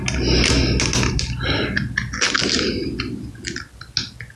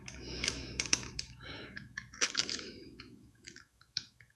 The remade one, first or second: second